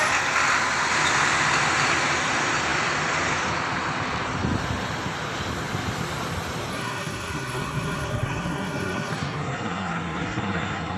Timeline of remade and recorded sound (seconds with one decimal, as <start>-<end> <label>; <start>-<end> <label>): 0.0-6.7 recorded; 6.7-11.0 remade

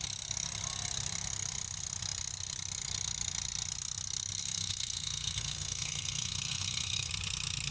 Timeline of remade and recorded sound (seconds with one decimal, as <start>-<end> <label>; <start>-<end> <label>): 0.0-4.4 recorded; 4.4-7.1 remade; 7.1-7.7 recorded

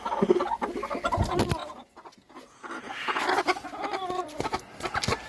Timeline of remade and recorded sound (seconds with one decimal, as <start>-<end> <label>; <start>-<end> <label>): 0.0-1.6 recorded; 1.6-3.2 remade; 3.2-5.3 recorded

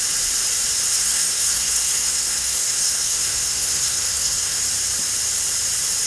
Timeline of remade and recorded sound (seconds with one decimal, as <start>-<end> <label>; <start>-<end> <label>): 0.0-0.9 recorded; 0.9-4.6 remade; 4.6-6.1 recorded

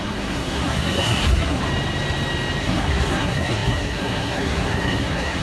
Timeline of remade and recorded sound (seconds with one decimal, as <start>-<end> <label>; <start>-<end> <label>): 0.0-1.6 remade; 1.6-2.6 recorded; 2.6-5.4 remade

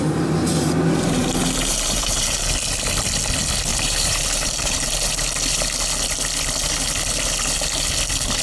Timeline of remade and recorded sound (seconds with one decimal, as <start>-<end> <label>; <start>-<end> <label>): 0.0-1.2 recorded; 1.2-2.4 remade; 2.4-3.7 recorded; 3.7-5.1 remade; 5.1-8.4 recorded

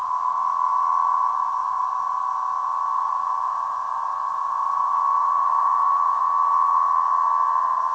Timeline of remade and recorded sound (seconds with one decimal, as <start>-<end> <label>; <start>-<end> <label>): 0.0-1.3 recorded; 1.3-1.9 remade; 1.9-2.9 recorded; 2.9-6.2 remade; 6.2-7.9 recorded